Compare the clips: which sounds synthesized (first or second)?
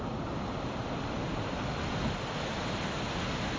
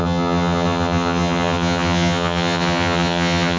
second